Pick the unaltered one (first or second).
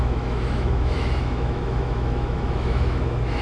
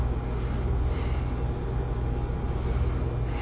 second